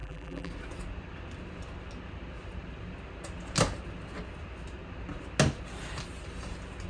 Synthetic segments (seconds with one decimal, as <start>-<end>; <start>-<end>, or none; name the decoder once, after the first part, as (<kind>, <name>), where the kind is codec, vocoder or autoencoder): 0.0-0.5 (vocoder, BigVGAN v2)